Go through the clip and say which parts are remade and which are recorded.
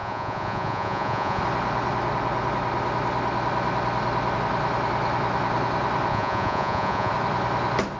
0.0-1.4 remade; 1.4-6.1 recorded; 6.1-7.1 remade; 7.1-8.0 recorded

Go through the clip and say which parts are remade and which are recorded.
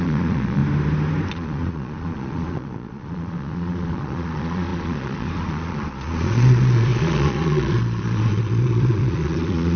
0.0-0.6 remade; 0.6-1.3 recorded; 1.3-9.8 remade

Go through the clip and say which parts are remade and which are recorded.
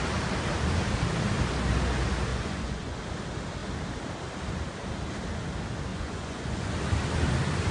0.0-2.3 recorded; 2.3-3.0 remade; 3.0-5.9 recorded; 5.9-6.7 remade; 6.7-7.7 recorded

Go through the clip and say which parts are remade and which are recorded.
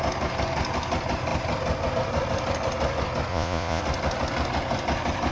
0.0-3.3 recorded; 3.3-3.8 remade; 3.8-5.3 recorded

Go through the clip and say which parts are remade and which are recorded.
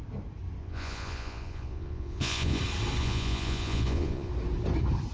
0.0-0.6 recorded; 0.6-2.6 remade; 2.6-3.0 recorded; 3.0-4.3 remade; 4.3-5.1 recorded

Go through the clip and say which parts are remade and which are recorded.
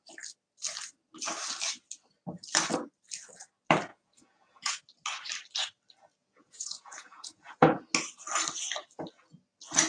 0.0-3.9 recorded; 3.9-4.8 remade; 4.8-6.2 recorded; 6.2-7.8 remade; 7.8-9.9 recorded